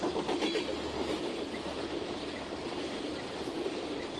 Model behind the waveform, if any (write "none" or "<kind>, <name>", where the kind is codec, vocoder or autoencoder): none